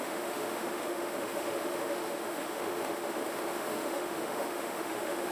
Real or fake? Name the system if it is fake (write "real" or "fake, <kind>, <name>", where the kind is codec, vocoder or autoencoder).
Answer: fake, autoencoder, DAC-VAE